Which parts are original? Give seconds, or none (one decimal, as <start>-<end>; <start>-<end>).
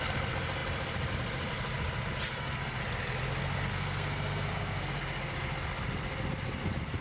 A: 0.0-2.3; 2.8-3.7; 4.8-7.0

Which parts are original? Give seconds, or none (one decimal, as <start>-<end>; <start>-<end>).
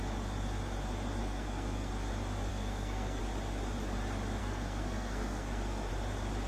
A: 0.0-1.2; 1.9-2.5; 3.2-4.4; 5.9-6.5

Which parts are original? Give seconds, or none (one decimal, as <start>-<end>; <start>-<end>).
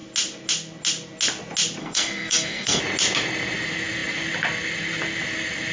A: 0.0-1.8; 2.8-5.7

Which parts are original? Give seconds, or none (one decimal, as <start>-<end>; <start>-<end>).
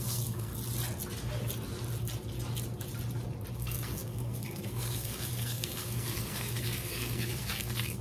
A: 0.5-3.5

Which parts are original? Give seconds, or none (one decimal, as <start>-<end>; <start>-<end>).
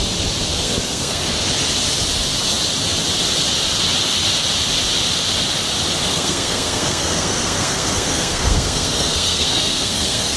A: 0.0-0.5; 1.2-6.1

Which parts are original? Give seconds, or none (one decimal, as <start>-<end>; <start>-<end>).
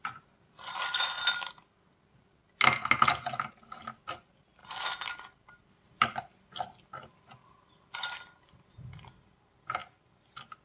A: 0.0-10.6